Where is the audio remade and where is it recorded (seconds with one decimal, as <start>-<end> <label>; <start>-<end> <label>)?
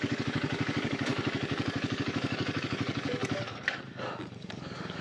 0.0-5.0 remade